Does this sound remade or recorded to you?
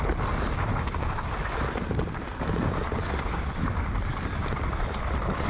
recorded